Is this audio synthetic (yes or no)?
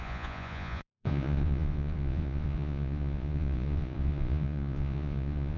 yes